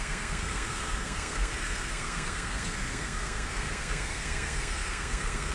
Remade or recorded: remade